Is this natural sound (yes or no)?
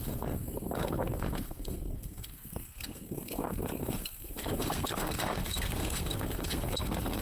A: no